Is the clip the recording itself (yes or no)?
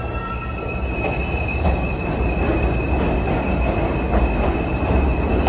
yes